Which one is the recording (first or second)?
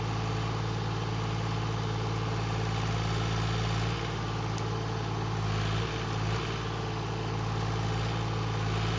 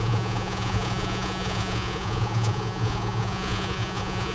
first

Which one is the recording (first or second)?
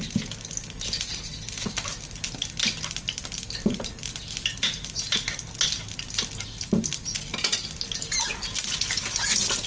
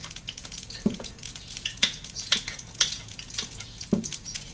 first